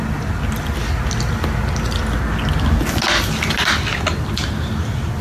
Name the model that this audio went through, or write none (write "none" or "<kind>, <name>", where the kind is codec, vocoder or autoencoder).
none